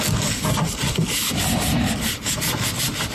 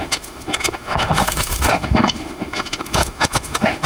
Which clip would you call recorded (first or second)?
first